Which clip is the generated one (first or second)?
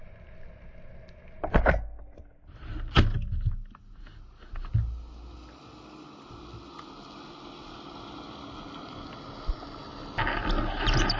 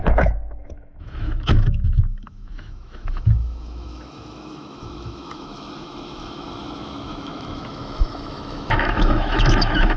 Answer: second